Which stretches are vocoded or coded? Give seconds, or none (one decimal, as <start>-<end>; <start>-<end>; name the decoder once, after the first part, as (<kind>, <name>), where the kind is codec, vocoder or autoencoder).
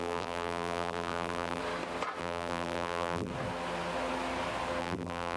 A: 0.0-1.6 (vocoder, BigVGAN v2); 2.2-3.3; 4.8-5.4